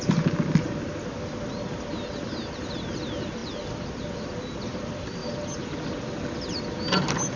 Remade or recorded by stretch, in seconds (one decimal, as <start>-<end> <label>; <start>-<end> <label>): 0.0-7.4 recorded